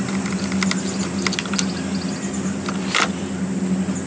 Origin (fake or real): real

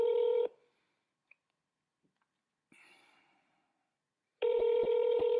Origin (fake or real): fake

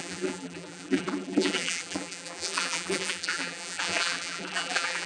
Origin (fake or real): fake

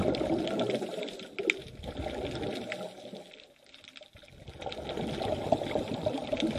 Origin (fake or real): real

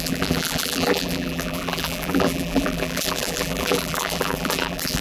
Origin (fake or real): fake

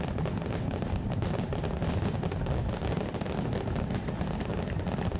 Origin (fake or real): real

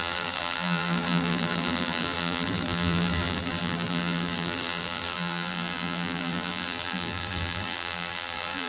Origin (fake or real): fake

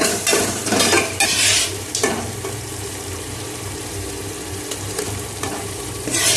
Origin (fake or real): fake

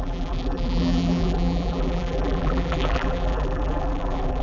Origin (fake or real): fake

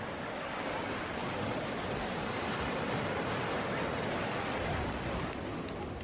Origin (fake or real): real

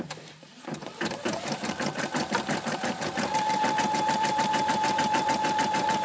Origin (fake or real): fake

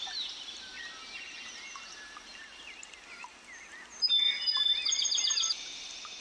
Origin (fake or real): real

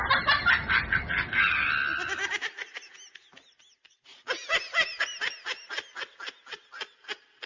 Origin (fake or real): real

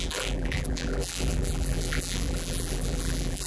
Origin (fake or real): fake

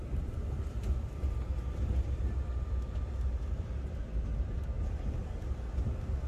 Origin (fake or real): fake